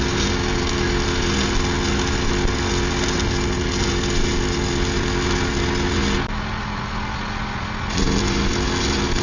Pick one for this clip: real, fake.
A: real